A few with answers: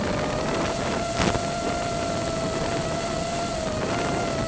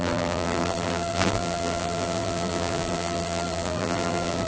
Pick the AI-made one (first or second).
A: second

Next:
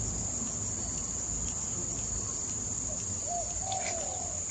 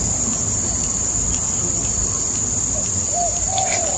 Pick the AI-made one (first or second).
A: second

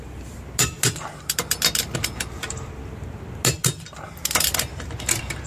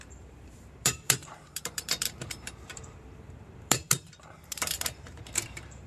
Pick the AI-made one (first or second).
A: second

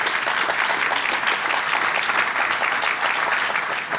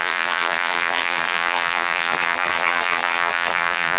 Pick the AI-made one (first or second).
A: second